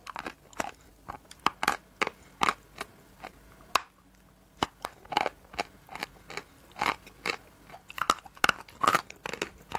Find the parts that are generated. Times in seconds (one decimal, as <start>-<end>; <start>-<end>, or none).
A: none